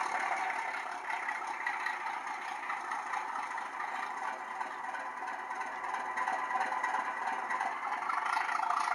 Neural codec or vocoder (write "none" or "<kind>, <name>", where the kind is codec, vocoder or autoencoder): none